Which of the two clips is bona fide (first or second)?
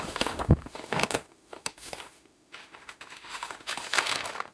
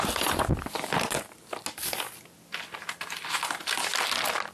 second